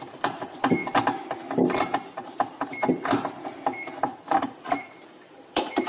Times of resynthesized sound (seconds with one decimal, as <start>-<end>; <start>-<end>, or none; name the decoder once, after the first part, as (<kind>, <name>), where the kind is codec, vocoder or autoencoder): 0.0-0.8 (vocoder, BigVGAN v2); 4.3-5.9